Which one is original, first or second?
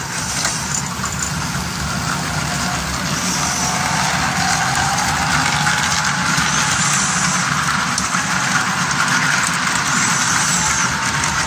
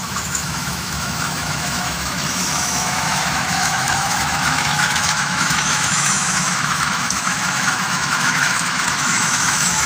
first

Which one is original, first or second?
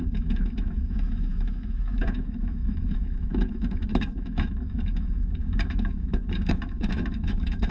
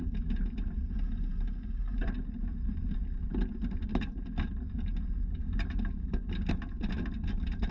second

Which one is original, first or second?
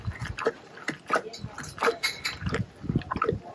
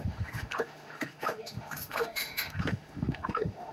first